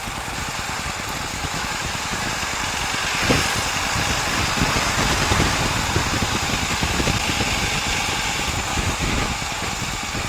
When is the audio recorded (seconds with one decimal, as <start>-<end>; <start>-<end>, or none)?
0.0-1.3; 2.3-8.7; 9.3-10.3